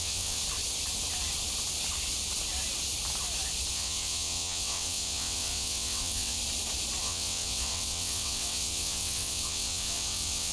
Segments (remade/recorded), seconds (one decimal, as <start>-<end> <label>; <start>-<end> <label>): 0.0-0.4 remade; 0.4-3.7 recorded; 3.7-6.4 remade; 6.4-7.0 recorded; 7.0-10.5 remade